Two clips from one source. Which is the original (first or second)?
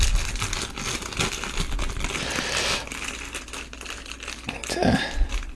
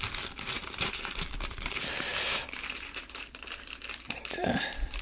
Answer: first